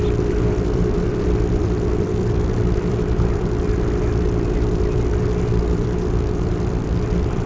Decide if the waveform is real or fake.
fake